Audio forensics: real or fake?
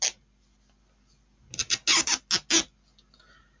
real